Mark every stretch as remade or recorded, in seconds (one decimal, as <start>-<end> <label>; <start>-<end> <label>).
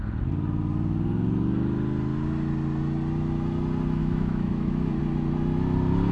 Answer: 0.0-4.0 recorded; 4.0-5.0 remade; 5.0-6.1 recorded